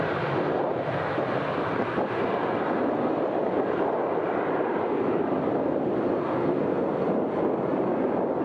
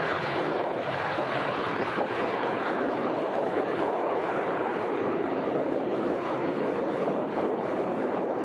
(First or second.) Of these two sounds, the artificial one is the second